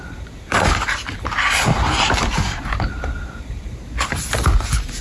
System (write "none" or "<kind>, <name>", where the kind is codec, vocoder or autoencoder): vocoder, BigVGAN v2